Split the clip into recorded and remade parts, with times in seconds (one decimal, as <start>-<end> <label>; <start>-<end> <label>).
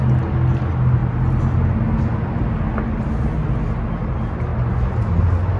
0.0-5.6 recorded